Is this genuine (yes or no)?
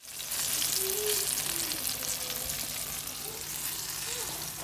yes